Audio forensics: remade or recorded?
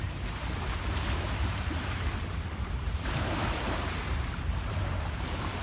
remade